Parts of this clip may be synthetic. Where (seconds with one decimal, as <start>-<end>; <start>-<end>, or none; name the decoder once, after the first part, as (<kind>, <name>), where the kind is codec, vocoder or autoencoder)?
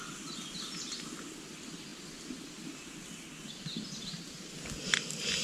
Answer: none